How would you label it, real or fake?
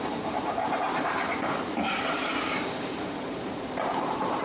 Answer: fake